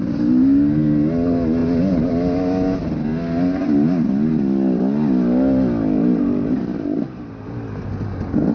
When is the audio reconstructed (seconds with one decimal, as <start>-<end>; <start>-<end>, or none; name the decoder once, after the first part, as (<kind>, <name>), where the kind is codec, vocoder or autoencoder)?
none